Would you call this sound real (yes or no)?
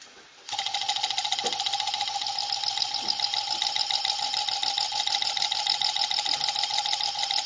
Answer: yes